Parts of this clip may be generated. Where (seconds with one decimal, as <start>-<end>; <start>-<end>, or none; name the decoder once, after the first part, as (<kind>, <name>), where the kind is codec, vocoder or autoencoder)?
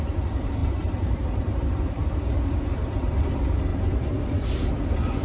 0.6-3.2 (vocoder, BigVGAN v2); 3.7-4.5